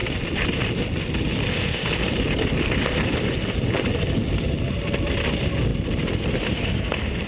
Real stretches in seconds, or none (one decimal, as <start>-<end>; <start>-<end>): 4.4-7.3